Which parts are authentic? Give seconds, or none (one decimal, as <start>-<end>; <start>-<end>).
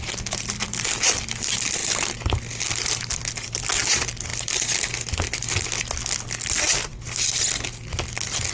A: 0.0-8.5